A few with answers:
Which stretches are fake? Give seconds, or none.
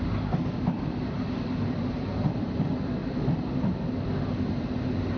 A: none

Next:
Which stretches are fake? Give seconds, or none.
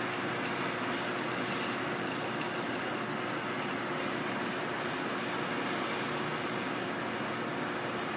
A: none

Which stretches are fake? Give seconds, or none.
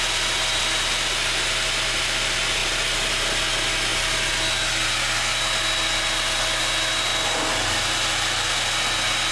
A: none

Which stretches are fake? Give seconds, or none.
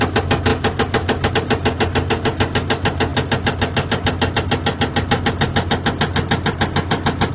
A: none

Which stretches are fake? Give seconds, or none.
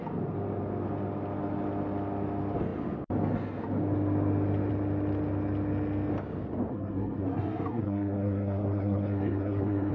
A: 6.7-9.9 (codec, SNAC)